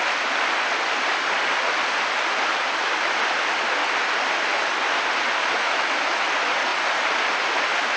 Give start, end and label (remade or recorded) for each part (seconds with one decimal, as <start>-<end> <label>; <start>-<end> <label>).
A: 0.0-2.5 recorded; 2.5-3.1 remade; 3.1-5.4 recorded; 5.4-6.1 remade; 6.1-8.0 recorded